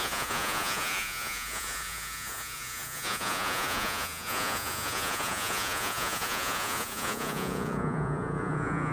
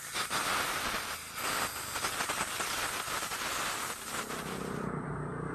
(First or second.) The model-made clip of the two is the first